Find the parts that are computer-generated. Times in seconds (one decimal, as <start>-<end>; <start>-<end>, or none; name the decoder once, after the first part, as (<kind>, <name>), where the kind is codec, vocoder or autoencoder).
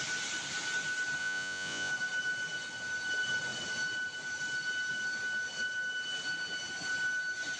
1.2-1.9 (vocoder, Vocos)